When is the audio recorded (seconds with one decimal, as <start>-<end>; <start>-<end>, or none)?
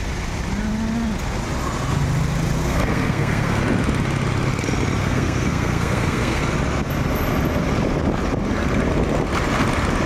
0.0-2.6; 3.6-5.0; 6.4-10.1